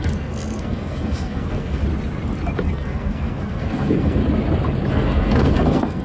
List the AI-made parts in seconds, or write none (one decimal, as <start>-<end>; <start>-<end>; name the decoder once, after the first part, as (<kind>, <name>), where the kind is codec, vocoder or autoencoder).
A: 0.0-1.8 (codec, SNAC); 2.7-4.2; 4.9-6.0